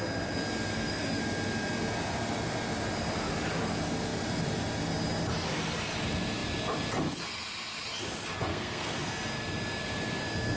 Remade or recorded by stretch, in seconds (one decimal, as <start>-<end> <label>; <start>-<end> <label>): 0.0-0.7 recorded; 0.7-1.2 remade; 1.2-8.5 recorded; 8.5-9.1 remade; 9.1-10.6 recorded